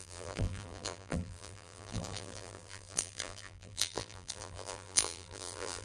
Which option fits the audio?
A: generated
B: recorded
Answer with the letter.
A